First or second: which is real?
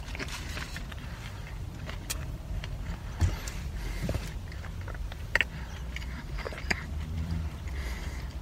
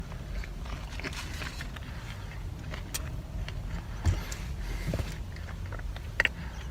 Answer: second